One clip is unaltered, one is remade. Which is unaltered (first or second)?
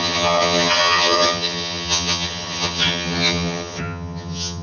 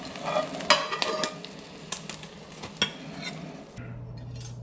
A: second